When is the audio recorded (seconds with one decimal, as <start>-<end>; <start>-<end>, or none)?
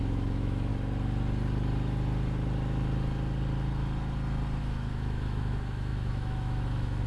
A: 0.7-4.6